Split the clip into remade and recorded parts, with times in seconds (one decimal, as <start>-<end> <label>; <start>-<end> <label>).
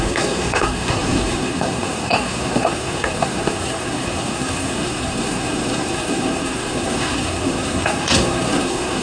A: 0.0-9.0 remade